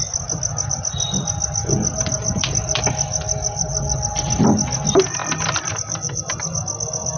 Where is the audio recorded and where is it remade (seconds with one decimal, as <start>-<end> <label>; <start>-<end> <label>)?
0.0-1.6 recorded; 1.6-4.3 remade; 4.3-5.2 recorded; 5.2-5.7 remade; 5.7-7.2 recorded